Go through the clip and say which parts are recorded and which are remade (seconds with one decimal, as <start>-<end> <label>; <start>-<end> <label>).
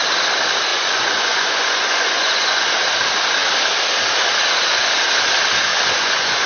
0.0-0.7 recorded; 0.7-2.7 remade; 2.7-5.7 recorded; 5.7-6.5 remade